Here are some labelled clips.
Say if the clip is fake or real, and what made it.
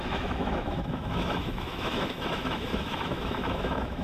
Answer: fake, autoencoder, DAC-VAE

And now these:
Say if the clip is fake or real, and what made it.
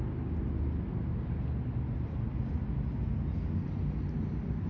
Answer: real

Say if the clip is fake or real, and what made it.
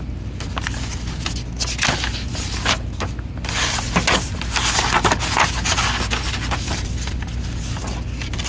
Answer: real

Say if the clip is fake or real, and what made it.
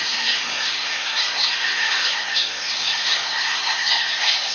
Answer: fake, codec, SNAC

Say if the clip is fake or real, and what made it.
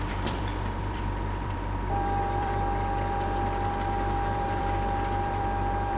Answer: fake, vocoder, BigVGAN v2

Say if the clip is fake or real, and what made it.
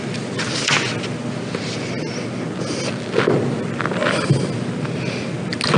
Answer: real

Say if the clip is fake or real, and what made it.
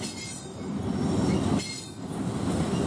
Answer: real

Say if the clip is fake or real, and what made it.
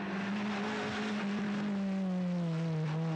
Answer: real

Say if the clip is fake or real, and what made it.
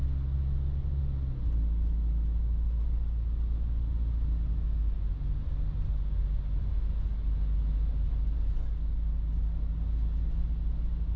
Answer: real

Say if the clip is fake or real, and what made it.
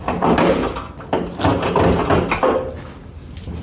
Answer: real